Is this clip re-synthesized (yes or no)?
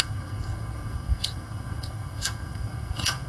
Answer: yes